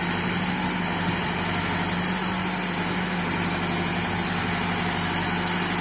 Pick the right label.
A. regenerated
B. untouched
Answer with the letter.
B